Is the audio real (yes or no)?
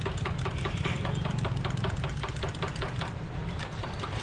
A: no